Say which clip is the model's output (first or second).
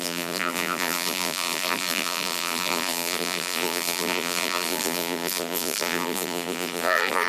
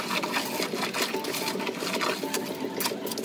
first